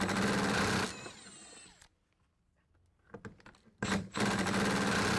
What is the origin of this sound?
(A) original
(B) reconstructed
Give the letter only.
A